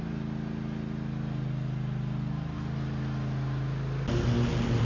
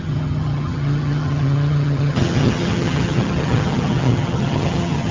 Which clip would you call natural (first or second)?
first